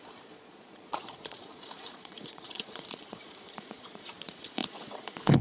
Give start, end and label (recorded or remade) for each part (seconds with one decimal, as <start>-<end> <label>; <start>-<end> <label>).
0.0-5.4 remade

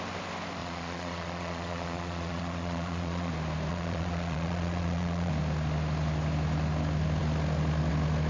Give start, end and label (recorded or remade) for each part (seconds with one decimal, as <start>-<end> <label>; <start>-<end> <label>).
0.0-0.6 recorded; 0.6-3.3 remade; 3.3-3.7 recorded; 3.7-5.3 remade; 5.3-8.3 recorded

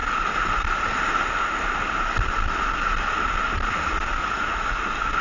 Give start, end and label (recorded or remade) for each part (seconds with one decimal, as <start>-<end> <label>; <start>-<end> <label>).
0.0-4.2 recorded; 4.2-4.8 remade; 4.8-5.2 recorded

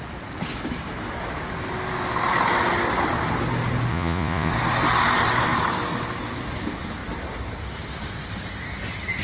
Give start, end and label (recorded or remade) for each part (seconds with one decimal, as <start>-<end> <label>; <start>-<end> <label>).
0.0-3.9 recorded; 3.9-4.5 remade; 4.5-9.2 recorded

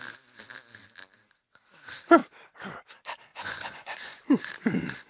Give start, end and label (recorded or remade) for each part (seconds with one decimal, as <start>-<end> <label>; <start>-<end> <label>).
0.0-3.3 recorded; 3.3-4.5 remade; 4.5-5.1 recorded

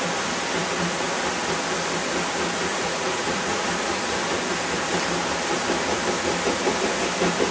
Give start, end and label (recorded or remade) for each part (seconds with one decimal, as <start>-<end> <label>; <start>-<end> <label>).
0.0-2.7 recorded; 2.7-3.6 remade; 3.6-7.5 recorded

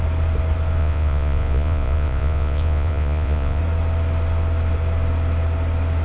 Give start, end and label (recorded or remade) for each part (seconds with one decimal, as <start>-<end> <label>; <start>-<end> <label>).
0.0-0.8 recorded; 0.8-3.6 remade; 3.6-6.0 recorded

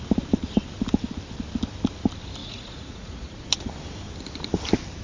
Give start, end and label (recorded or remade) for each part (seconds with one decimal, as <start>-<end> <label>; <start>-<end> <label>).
0.0-2.4 recorded; 2.4-3.4 remade; 3.4-5.0 recorded